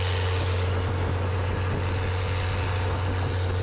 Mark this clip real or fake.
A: real